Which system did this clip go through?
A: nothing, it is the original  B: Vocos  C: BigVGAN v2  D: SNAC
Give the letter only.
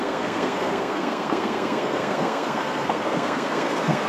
D